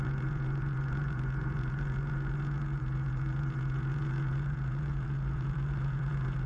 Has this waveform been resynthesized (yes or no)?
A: yes